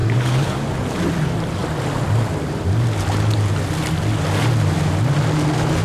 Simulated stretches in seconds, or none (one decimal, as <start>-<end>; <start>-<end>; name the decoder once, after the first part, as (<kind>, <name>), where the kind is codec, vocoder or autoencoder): 0.0-0.7 (codec, DAC)